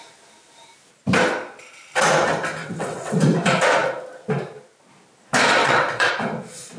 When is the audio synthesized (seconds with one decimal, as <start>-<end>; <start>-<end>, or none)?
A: 2.6-3.1; 5.6-6.1